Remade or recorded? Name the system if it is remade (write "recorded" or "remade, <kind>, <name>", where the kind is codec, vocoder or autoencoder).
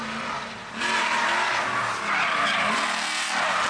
recorded